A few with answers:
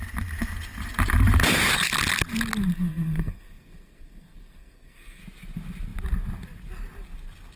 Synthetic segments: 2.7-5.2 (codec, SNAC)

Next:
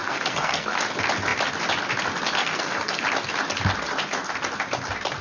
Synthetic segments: 0.0-0.8 (codec, SNAC); 2.4-3.0

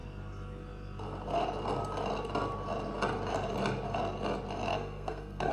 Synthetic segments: 4.7-5.5 (codec, SNAC)

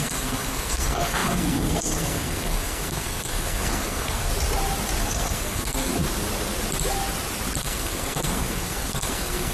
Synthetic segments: 0.0-4.3 (codec, SNAC); 5.0-5.9; 7.6-9.5

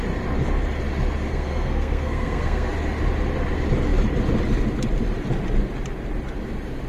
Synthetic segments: 1.3-2.7 (codec, SNAC)

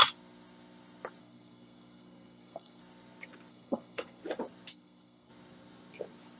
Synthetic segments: 1.2-2.8 (codec, SNAC); 3.5-4.2; 4.7-5.3

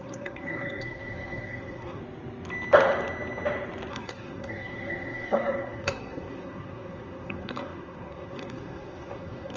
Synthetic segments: 0.0-2.0 (codec, SNAC); 3.9-9.6

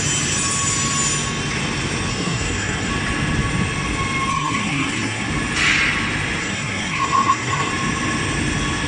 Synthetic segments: 2.1-2.9 (codec, SNAC); 4.3-5.3; 6.4-7.7